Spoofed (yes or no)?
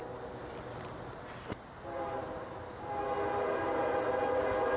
no